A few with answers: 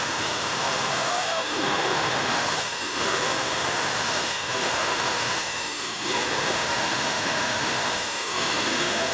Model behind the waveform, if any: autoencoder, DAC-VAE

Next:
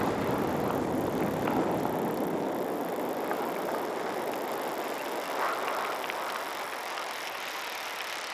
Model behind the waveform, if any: none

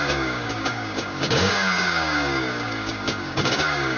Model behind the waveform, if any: codec, DAC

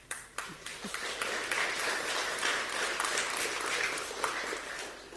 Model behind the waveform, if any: none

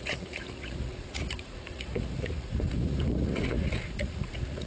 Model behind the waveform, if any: vocoder, Vocos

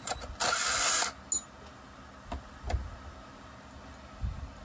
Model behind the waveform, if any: none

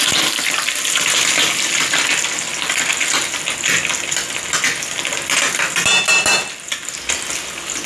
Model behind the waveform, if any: none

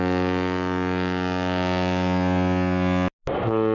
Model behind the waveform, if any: none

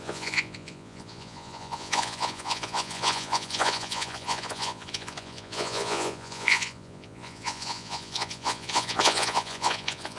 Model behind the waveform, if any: vocoder, Vocos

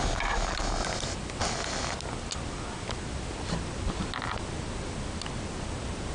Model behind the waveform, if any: none